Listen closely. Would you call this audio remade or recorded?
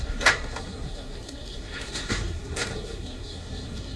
remade